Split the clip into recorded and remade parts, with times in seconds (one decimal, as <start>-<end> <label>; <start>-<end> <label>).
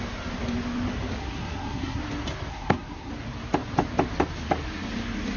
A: 0.0-1.2 recorded; 1.2-2.0 remade; 2.0-2.5 recorded; 2.5-3.1 remade; 3.1-5.4 recorded